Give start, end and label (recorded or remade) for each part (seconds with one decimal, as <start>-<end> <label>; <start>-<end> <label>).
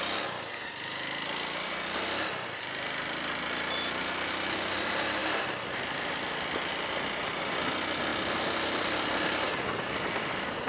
0.0-10.7 recorded